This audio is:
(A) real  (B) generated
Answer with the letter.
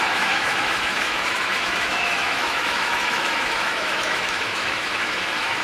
B